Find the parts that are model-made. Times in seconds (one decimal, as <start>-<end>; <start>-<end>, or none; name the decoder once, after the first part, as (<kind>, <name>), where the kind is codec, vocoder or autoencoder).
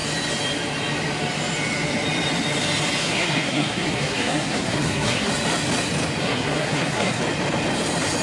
3.0-5.3 (codec, SNAC); 6.2-7.2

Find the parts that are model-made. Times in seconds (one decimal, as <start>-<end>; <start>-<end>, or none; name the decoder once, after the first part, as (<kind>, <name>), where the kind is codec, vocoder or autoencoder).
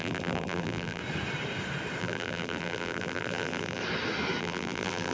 0.0-1.0 (vocoder, BigVGAN v2); 2.0-3.8; 4.4-5.1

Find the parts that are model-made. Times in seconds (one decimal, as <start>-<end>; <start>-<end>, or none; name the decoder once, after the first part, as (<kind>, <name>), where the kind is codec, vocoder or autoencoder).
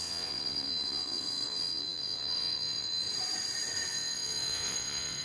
0.0-3.0 (vocoder, WaveNeXt); 3.9-5.2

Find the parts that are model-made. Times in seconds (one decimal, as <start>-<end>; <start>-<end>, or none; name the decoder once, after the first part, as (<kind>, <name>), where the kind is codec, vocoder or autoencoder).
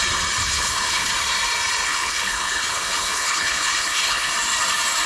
0.4-1.1 (codec, HILCodec); 1.9-4.3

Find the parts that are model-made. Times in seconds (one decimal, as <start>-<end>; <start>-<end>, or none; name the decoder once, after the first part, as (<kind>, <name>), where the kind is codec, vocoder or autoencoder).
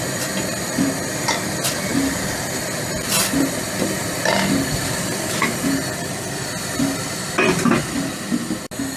none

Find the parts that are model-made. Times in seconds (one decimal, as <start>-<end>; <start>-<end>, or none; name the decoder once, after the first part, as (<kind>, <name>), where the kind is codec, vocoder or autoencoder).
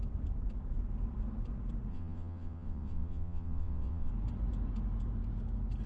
1.9-4.1 (vocoder, WaveNeXt)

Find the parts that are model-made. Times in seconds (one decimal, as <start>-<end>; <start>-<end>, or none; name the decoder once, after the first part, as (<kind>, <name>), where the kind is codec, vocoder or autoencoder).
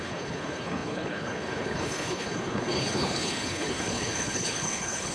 0.0-5.1 (codec, HILCodec)